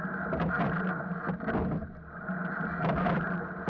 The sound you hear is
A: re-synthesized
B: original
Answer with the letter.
B